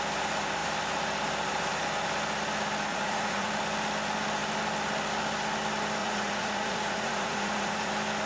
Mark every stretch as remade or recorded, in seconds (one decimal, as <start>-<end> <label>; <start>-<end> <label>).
0.0-2.9 recorded; 2.9-3.5 remade; 3.5-6.0 recorded; 6.0-7.9 remade; 7.9-8.3 recorded